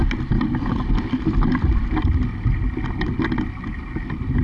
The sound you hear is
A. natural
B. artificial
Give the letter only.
A